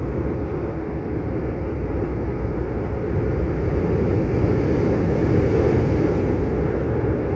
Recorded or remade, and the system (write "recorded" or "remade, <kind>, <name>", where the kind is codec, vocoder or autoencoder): recorded